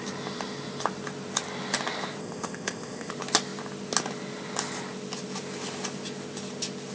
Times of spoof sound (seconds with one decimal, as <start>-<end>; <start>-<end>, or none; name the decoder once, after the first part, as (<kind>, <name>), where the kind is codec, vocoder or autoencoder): 2.2-3.1 (codec, ZipCodec)